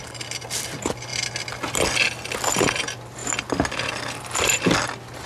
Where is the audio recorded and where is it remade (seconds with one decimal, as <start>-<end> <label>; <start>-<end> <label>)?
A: 0.0-5.3 recorded